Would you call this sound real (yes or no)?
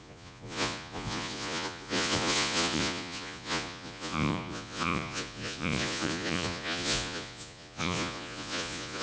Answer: no